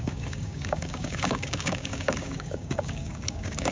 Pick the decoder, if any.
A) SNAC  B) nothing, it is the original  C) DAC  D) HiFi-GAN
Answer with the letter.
C